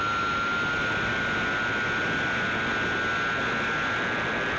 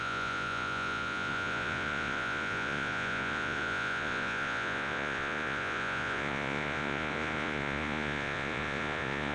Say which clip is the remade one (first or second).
second